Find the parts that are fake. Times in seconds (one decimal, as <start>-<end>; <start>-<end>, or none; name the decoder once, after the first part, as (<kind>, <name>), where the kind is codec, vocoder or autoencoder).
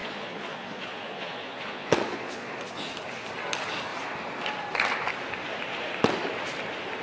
0.0-2.9 (vocoder, Vocos)